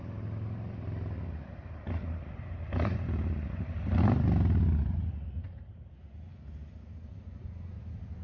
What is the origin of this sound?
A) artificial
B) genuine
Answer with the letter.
B